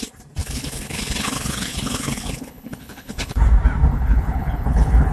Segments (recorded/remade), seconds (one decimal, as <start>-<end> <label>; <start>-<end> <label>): 0.0-0.4 recorded; 0.4-3.4 remade; 3.4-3.9 recorded; 3.9-5.1 remade